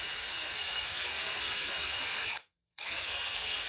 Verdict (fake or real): fake